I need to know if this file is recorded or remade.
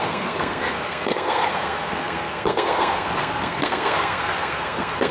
remade